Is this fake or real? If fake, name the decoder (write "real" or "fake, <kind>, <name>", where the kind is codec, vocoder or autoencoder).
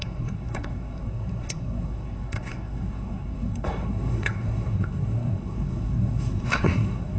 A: fake, codec, SNAC